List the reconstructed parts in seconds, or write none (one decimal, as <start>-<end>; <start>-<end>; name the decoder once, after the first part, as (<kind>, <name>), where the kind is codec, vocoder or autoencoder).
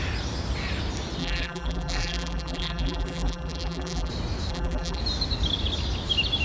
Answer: 1.2-4.1 (vocoder, BigVGAN v2); 4.5-5.0